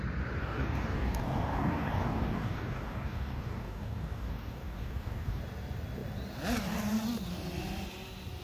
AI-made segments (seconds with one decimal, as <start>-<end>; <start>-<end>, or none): 0.4-5.4

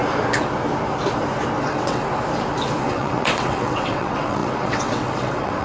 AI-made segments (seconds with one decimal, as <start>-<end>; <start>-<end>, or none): 1.6-2.0; 2.8-5.6

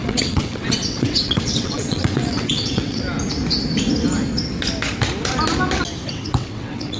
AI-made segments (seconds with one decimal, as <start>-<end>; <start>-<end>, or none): 0.0-3.0; 6.0-7.0